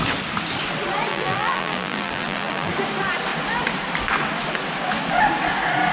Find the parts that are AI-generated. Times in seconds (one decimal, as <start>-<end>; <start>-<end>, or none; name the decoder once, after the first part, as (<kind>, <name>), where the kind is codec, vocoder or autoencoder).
1.1-2.7 (vocoder, BigVGAN v2)